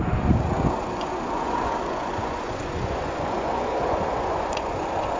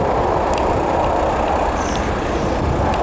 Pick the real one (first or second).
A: second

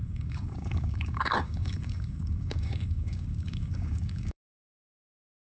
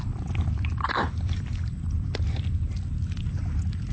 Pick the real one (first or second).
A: second